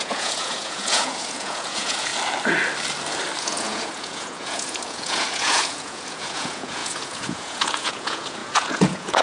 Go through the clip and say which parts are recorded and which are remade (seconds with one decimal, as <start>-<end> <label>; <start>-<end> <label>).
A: 0.0-2.1 remade; 2.1-3.4 recorded; 3.4-9.2 remade